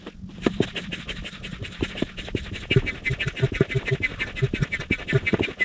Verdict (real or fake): real